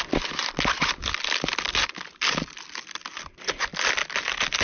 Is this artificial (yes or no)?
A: no